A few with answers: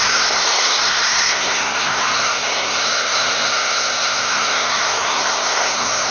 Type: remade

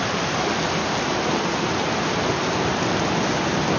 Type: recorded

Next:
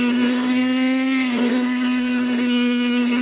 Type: remade